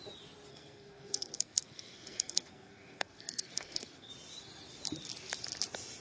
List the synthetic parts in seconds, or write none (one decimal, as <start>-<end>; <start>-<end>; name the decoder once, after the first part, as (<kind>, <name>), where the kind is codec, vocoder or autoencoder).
0.5-4.1 (codec, SNAC)